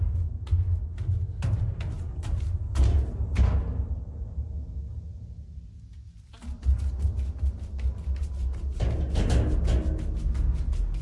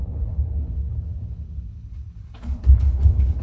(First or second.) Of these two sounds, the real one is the first